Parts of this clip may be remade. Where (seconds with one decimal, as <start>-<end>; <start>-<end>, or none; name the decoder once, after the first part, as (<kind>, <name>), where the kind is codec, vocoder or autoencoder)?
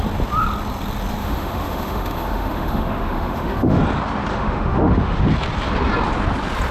1.2-3.8 (autoencoder, DAC-VAE); 4.3-5.2